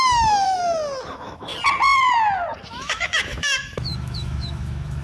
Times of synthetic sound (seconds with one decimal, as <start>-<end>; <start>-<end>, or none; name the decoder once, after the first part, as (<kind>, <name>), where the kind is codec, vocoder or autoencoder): 0.0-0.6 (autoencoder, DAC-VAE); 1.1-1.5; 2.7-5.0